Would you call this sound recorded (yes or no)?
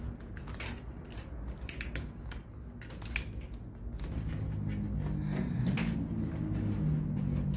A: yes